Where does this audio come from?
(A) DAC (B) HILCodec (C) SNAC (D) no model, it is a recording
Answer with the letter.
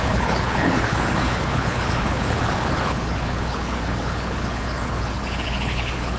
B